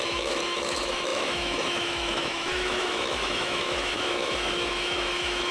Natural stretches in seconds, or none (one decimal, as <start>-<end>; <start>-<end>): none